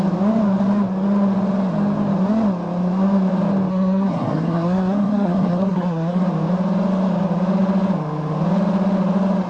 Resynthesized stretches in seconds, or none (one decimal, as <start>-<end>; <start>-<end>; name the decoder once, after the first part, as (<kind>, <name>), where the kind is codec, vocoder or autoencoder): 3.7-6.2 (codec, SNAC)